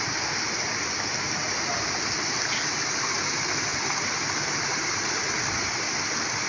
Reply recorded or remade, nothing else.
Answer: recorded